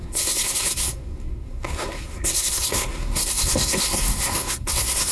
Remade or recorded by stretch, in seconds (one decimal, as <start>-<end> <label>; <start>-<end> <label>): 0.0-5.1 remade